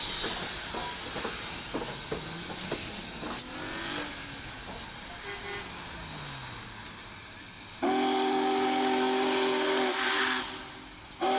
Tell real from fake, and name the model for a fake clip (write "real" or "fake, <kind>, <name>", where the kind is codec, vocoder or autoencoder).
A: real